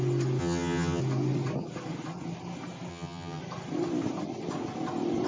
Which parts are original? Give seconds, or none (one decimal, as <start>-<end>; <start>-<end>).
0.0-0.4; 1.0-2.9; 3.4-5.3